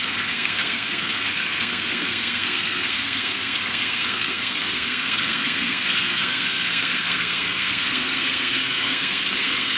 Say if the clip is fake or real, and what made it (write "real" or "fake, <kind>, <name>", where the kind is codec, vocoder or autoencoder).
fake, codec, SNAC